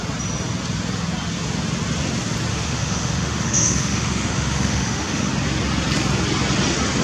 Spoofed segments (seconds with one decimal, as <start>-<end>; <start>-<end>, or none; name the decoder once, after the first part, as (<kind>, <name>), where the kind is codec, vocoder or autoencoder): 2.5-5.3 (autoencoder, DAC-VAE)